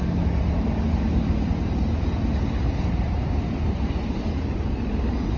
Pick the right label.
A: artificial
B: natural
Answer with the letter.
B